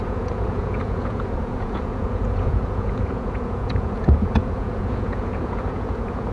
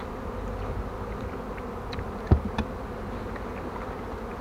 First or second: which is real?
second